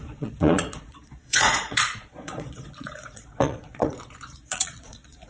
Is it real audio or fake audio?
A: fake